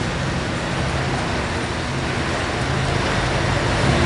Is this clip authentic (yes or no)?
yes